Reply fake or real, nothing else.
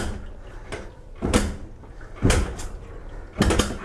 real